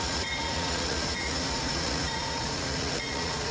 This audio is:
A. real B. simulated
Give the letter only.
B